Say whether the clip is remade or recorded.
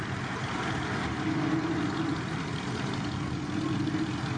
recorded